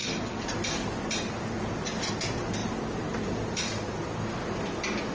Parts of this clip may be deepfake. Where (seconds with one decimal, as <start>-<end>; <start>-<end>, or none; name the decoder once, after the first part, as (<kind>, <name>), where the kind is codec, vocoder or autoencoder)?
none